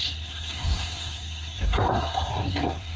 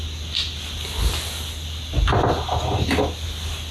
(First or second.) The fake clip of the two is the first